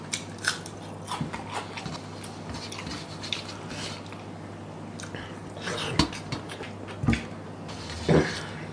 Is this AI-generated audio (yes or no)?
no